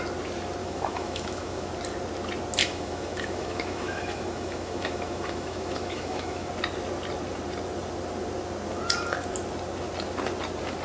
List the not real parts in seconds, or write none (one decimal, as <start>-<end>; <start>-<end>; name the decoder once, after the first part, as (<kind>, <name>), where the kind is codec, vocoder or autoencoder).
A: 0.6-1.7 (autoencoder, DAC-VAE); 2.6-6.5